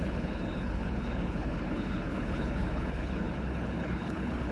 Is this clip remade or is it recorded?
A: remade